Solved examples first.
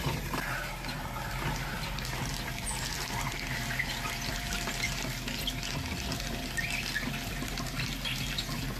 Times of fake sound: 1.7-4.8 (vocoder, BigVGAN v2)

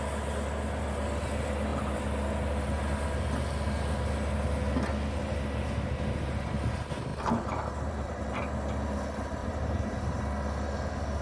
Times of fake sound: 7.1-8.4 (vocoder, BigVGAN v2); 9.4-10.2

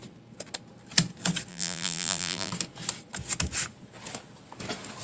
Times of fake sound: 1.5-2.5 (vocoder, BigVGAN v2)